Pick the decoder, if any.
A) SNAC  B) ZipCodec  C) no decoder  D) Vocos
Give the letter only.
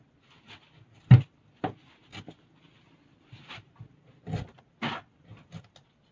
C